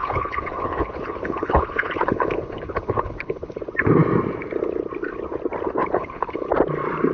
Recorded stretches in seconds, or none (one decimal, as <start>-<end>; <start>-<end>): 3.6-5.8; 6.5-7.1